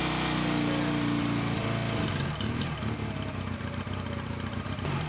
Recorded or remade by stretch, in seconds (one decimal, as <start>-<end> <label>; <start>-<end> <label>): 0.0-5.1 recorded

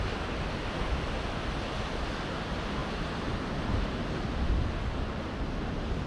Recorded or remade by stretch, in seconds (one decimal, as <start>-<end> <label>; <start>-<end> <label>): 0.0-6.1 recorded

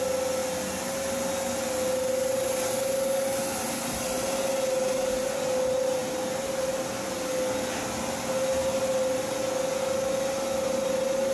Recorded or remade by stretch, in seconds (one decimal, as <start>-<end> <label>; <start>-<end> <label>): 0.0-11.3 recorded